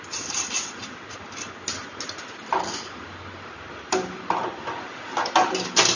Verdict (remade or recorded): recorded